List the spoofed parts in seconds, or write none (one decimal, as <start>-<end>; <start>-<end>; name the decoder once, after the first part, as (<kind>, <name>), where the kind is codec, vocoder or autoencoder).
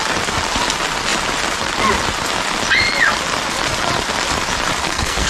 4.8-5.3 (codec, SNAC)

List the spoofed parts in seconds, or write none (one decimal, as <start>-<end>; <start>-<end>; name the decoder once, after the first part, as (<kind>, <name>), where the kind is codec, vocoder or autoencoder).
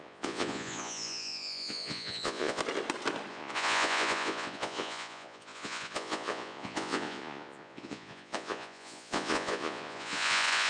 0.0-2.6 (vocoder, Vocos); 3.3-10.7